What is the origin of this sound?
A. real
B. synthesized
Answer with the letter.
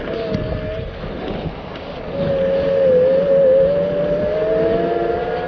A